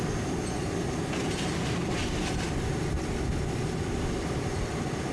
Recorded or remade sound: recorded